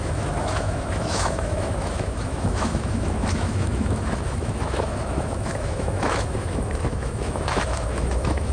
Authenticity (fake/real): fake